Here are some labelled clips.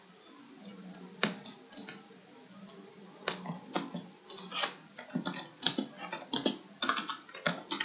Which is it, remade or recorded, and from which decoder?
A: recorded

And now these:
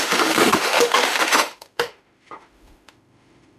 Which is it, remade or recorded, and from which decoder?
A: remade, autoencoder, DAC-VAE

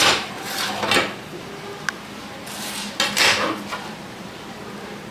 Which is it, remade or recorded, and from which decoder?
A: recorded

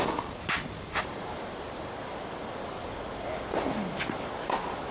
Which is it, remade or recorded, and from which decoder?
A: recorded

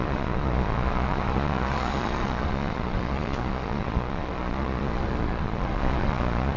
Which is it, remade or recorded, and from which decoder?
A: remade, vocoder, Vocos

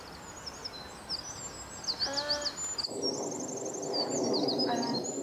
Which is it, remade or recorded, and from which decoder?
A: recorded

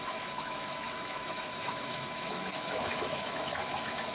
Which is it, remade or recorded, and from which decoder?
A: remade, autoencoder, DAC-VAE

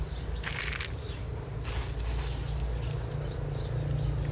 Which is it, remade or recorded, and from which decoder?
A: recorded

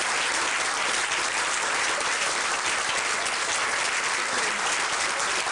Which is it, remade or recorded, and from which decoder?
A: remade, vocoder, BigVGAN v2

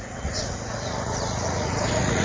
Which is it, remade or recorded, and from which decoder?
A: remade, vocoder, Vocos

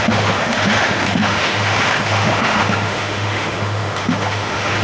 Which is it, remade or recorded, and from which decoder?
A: remade, autoencoder, DAC-VAE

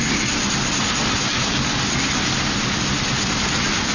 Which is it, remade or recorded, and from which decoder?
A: recorded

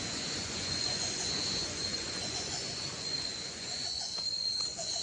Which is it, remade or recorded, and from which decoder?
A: remade, vocoder, Vocos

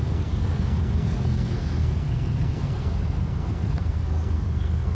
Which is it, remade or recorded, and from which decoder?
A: remade, codec, SNAC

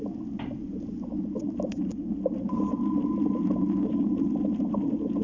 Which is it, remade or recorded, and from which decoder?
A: recorded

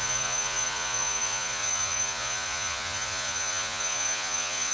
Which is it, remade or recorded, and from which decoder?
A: remade, vocoder, Vocos